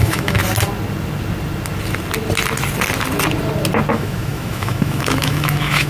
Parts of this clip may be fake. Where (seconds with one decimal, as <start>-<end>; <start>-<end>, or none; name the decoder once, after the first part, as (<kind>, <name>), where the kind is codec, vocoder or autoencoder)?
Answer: 0.0-0.4 (autoencoder, DAC-VAE); 3.9-5.9